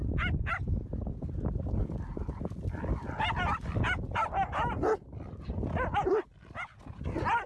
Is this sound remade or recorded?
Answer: recorded